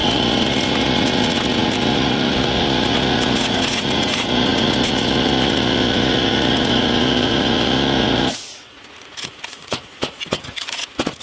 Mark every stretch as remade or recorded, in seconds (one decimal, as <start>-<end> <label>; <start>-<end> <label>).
0.0-11.2 remade

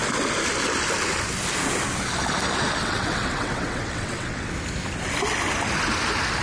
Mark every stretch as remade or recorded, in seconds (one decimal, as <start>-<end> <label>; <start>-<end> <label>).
0.0-2.8 recorded; 2.8-4.5 remade; 4.5-6.4 recorded

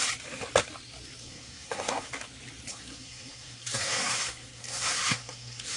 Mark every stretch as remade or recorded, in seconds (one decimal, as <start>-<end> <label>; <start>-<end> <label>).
0.0-1.2 recorded; 1.2-2.1 remade; 2.1-2.7 recorded; 2.7-5.8 remade

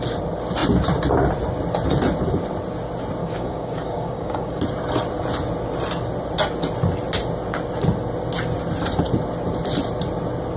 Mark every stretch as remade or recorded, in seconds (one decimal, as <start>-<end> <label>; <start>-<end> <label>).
0.0-3.2 recorded; 3.2-4.6 remade; 4.6-10.6 recorded

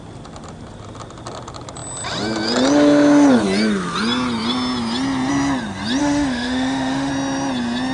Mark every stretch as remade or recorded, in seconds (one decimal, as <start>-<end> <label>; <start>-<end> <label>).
0.0-6.0 recorded; 6.0-7.1 remade; 7.1-7.9 recorded